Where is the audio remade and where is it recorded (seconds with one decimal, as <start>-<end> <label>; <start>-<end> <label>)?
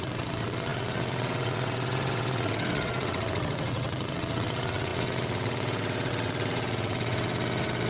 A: 0.0-7.9 remade